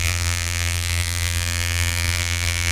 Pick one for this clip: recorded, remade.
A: remade